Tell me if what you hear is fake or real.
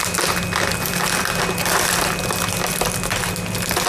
real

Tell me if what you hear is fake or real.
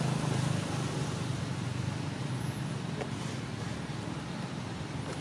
real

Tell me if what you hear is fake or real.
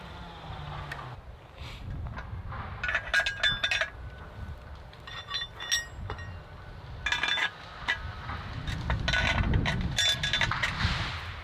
real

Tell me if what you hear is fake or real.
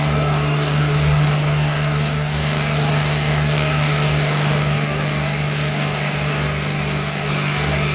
fake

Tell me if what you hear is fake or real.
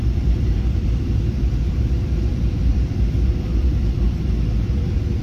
fake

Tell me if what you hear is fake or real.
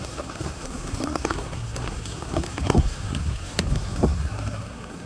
fake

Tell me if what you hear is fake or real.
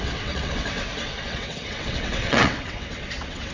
fake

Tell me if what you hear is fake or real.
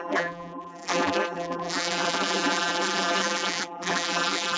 fake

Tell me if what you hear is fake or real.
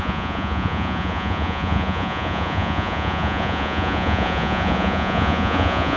fake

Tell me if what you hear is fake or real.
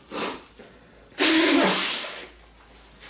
real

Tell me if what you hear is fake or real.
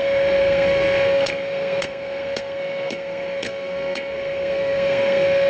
fake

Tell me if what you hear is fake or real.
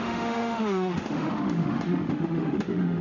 fake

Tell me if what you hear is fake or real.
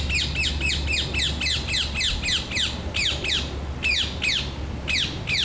real